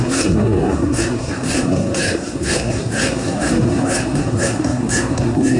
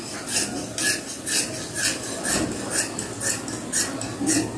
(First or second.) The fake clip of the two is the first